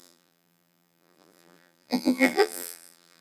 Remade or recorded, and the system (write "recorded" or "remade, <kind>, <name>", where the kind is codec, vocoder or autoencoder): remade, vocoder, BigVGAN v2